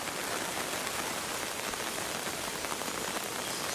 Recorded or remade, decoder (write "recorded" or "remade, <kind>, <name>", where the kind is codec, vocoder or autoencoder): recorded